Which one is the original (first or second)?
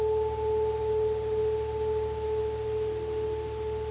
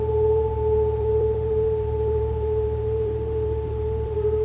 first